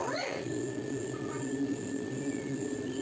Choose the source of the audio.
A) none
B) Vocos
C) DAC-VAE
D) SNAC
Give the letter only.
B